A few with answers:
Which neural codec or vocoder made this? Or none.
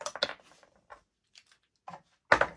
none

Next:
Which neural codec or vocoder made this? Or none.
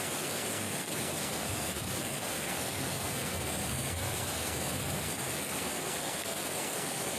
codec, SNAC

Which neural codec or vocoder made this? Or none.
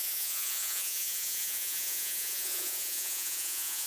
vocoder, Vocos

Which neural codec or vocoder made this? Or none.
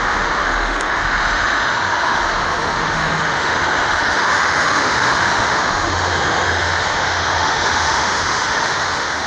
autoencoder, DAC-VAE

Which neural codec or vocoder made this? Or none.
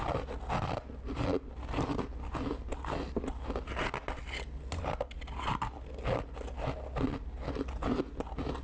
none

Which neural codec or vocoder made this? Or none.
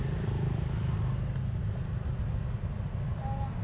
none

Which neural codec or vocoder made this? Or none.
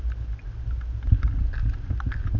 none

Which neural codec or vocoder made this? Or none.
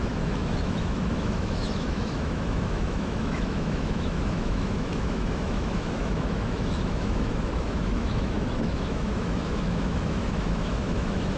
autoencoder, DAC-VAE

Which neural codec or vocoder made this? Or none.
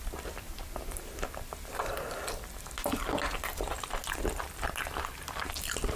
none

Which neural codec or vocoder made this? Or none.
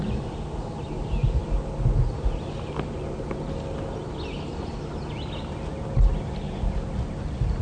none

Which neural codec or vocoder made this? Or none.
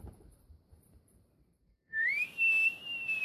vocoder, BigVGAN v2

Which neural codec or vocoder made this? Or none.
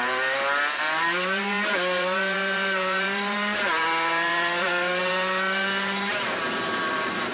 vocoder, BigVGAN v2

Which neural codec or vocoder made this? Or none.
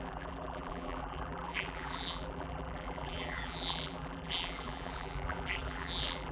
vocoder, BigVGAN v2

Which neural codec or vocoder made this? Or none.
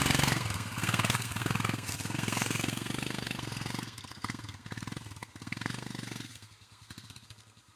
codec, SNAC